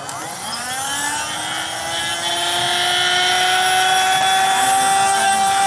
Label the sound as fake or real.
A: real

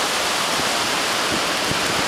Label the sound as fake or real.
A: real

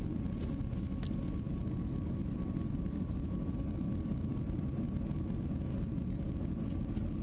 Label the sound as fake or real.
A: real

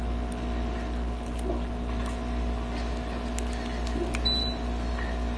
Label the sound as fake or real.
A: real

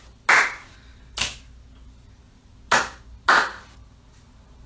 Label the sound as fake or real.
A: real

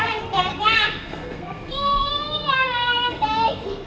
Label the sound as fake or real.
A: fake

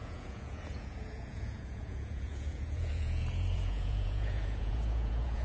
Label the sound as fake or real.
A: fake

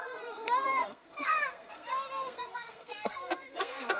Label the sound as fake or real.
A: fake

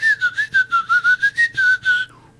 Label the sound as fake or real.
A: real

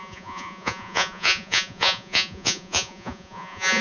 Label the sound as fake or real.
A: fake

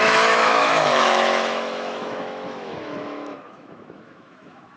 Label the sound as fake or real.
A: fake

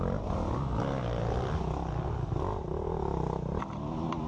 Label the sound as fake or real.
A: real